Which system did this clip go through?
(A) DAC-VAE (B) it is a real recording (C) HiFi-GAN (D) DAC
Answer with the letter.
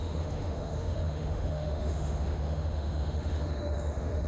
A